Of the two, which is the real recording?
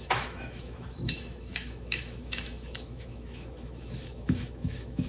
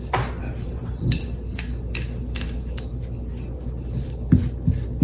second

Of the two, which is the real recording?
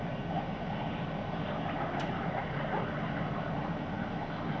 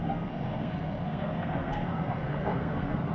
first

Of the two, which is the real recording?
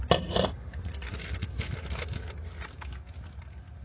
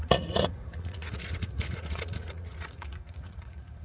first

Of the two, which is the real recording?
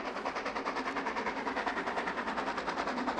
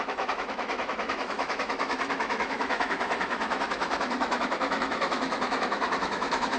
first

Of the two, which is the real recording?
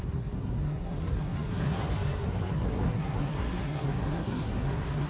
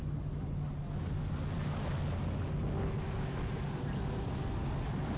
second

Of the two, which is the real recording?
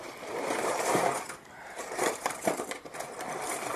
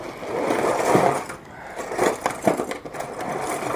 second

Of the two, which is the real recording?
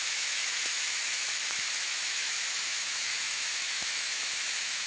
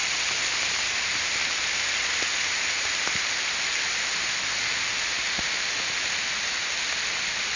second